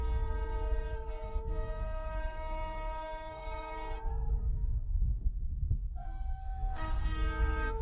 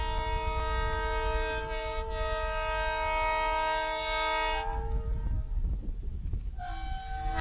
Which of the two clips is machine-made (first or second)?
first